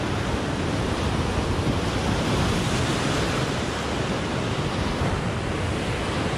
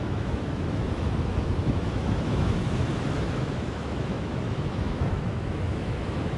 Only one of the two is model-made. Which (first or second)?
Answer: second